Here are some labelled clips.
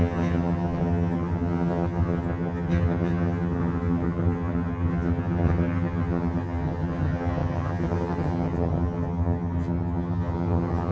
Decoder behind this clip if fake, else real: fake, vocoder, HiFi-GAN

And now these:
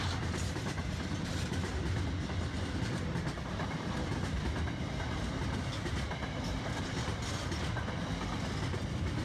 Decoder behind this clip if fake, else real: real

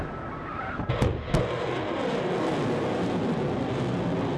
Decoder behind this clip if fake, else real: real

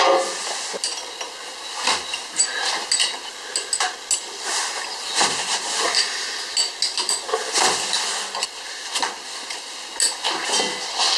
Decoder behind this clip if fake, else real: real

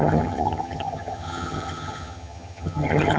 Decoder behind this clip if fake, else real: fake, vocoder, HiFi-GAN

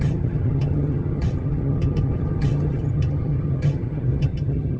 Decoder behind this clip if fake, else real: fake, vocoder, HiFi-GAN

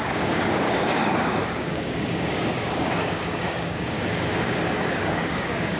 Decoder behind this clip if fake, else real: fake, codec, DAC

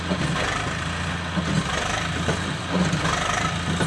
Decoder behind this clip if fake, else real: real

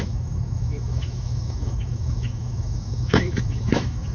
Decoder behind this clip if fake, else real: fake, autoencoder, DAC-VAE